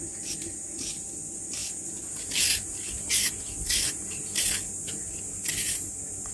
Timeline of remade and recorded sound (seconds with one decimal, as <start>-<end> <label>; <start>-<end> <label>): 0.0-6.3 recorded